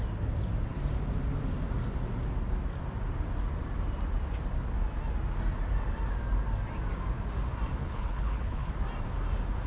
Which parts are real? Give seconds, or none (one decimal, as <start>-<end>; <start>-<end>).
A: 0.0-7.8; 8.7-9.7

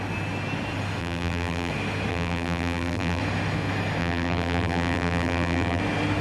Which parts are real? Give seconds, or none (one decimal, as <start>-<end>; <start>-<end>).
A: 0.0-1.0; 1.7-2.1; 3.2-4.0; 5.8-6.2

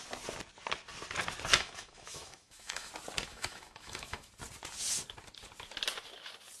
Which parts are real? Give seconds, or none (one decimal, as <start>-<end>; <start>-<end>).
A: 0.0-1.5; 2.9-3.3; 4.3-6.6

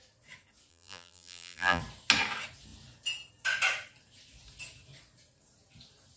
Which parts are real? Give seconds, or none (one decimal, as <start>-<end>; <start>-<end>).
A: 0.0-0.7; 1.8-6.2